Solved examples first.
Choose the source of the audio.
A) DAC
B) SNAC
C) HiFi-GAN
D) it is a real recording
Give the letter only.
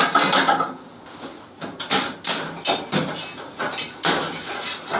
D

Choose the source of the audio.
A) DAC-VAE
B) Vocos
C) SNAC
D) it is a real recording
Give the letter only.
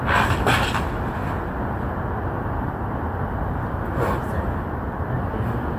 D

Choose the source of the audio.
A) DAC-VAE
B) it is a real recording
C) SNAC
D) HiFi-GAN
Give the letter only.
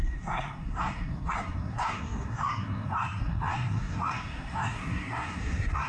C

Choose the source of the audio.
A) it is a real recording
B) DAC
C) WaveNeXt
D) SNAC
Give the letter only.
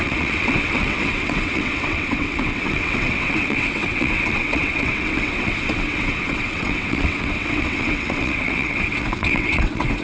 C